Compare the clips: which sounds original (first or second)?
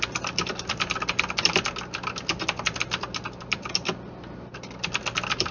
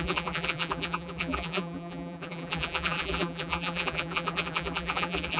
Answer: first